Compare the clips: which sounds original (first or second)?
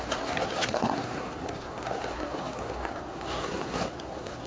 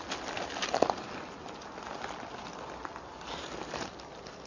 second